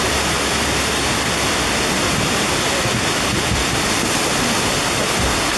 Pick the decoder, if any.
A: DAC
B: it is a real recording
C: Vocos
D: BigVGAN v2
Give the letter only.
B